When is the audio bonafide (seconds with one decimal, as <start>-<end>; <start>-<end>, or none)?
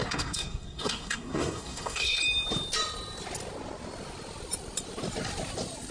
2.2-5.9